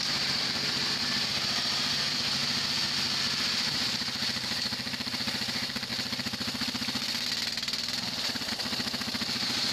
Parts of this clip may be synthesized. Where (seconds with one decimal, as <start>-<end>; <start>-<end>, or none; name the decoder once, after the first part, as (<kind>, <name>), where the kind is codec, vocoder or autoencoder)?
0.0-2.4 (vocoder, BigVGAN v2); 3.9-5.9; 8.5-9.7